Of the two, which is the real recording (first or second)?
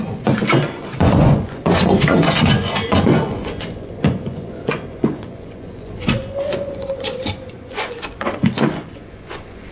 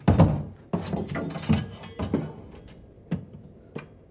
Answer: second